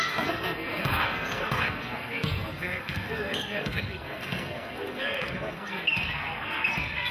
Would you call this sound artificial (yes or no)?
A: yes